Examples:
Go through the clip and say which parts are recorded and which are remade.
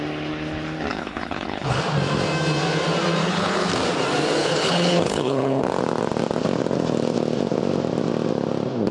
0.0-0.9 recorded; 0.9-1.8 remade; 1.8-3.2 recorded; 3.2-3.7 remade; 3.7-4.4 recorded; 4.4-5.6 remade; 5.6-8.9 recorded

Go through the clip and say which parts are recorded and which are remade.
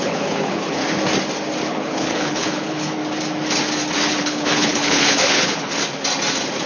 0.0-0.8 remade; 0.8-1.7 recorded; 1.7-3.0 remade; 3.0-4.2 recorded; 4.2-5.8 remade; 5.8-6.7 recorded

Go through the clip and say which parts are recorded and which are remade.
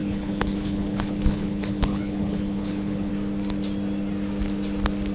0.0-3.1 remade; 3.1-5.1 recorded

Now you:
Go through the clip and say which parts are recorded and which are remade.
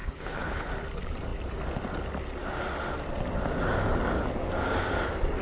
0.0-0.7 remade; 0.7-5.4 recorded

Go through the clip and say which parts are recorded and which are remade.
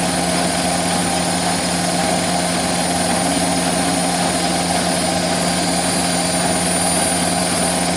0.0-8.0 recorded